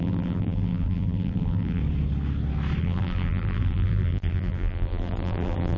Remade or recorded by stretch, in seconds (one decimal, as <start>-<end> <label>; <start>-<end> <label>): 0.0-1.8 remade; 1.8-2.8 recorded; 2.8-5.8 remade